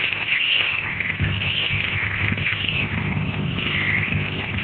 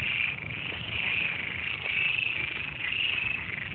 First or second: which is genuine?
second